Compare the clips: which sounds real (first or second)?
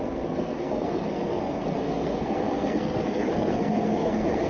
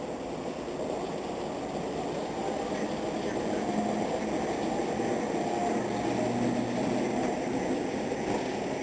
second